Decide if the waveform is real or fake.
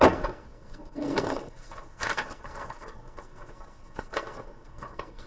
fake